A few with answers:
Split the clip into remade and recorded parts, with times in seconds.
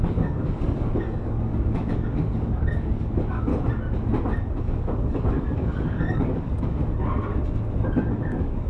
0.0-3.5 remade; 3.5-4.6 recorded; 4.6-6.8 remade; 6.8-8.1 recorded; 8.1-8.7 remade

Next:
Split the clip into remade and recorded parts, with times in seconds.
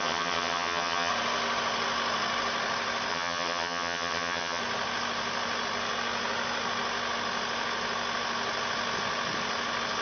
0.0-1.1 remade; 1.1-3.1 recorded; 3.1-4.6 remade; 4.6-10.0 recorded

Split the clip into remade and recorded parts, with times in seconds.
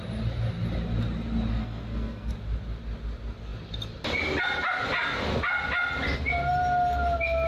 0.0-1.5 recorded; 1.5-2.3 remade; 2.3-7.5 recorded